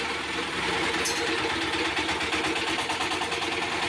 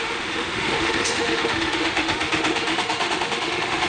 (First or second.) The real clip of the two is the first